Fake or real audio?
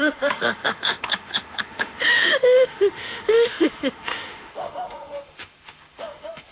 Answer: fake